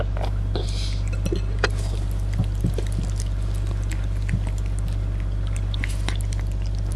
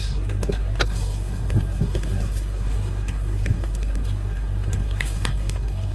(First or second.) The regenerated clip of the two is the second